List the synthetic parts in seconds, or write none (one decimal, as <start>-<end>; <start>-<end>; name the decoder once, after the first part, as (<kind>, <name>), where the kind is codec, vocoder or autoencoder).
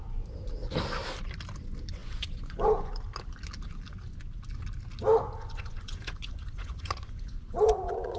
2.0-2.9 (vocoder, Vocos); 5.4-8.2